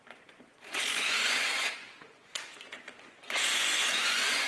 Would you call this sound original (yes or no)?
no